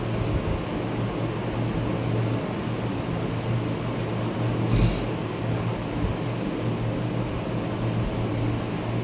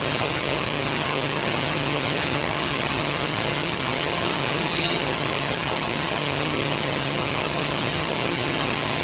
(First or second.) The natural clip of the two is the first